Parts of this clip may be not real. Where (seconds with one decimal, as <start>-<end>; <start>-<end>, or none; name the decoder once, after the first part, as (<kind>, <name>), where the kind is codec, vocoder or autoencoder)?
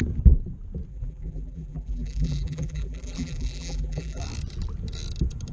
0.9-4.2 (vocoder, BigVGAN v2)